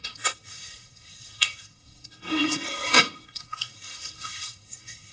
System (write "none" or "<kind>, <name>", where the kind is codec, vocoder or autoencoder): codec, SNAC